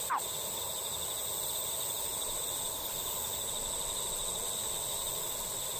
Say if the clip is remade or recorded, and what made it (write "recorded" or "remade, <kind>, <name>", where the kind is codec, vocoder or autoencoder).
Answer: recorded